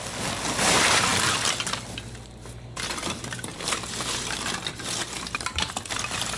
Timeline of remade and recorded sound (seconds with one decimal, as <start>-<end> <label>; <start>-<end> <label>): 0.0-6.4 recorded